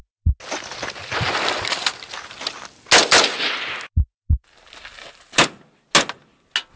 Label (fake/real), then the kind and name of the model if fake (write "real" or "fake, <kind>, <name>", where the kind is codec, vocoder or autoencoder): real